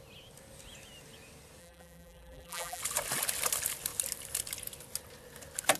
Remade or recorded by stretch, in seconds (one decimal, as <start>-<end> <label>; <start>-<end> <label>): 0.0-1.6 recorded; 1.6-2.8 remade; 2.8-5.8 recorded